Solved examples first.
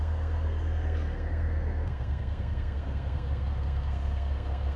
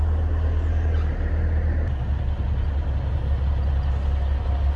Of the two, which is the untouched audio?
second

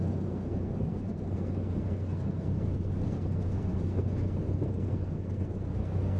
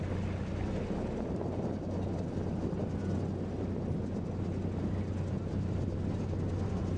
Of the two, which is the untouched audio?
second